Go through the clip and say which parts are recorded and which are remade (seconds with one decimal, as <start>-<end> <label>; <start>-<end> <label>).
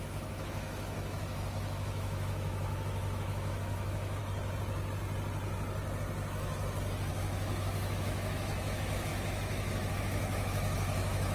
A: 0.0-4.2 remade; 4.2-7.1 recorded; 7.1-11.3 remade